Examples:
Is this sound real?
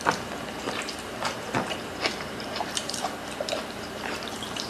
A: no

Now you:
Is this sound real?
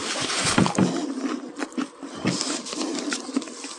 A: no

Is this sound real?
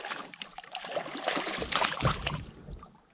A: no